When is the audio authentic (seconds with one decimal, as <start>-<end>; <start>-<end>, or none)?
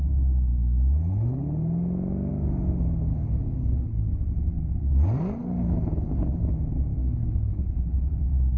0.0-3.1; 4.1-5.4; 6.5-7.0; 8.2-8.6